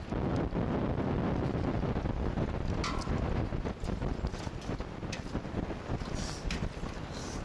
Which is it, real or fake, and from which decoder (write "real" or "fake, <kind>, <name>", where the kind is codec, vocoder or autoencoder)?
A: real